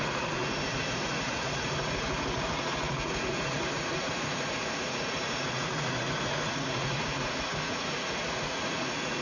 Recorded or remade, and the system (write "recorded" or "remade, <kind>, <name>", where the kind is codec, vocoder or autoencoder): remade, vocoder, Vocos